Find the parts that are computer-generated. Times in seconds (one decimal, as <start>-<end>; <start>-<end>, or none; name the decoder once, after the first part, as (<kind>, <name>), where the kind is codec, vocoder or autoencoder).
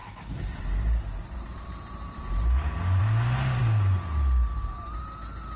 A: none